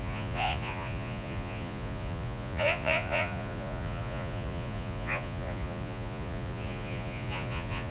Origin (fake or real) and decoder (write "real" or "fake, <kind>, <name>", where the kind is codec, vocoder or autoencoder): fake, vocoder, Vocos